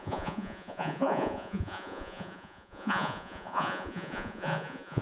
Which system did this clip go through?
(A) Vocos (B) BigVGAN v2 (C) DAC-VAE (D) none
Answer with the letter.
A